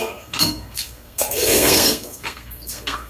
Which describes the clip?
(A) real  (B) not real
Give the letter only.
B